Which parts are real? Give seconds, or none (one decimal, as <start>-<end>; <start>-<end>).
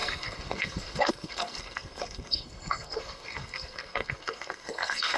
none